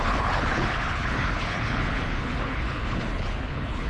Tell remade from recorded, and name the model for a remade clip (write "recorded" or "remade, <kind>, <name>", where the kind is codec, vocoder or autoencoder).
remade, codec, HILCodec